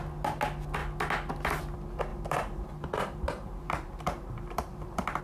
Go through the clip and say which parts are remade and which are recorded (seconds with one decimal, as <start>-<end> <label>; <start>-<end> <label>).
0.0-2.1 recorded; 2.1-5.2 remade

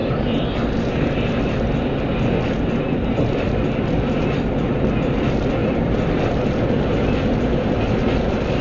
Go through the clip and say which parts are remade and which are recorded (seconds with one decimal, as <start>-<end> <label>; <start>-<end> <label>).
0.0-8.6 recorded